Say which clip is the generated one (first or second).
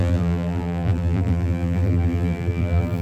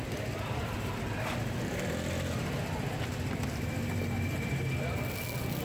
first